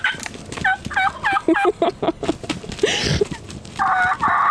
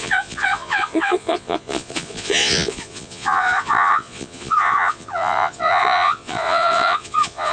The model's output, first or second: second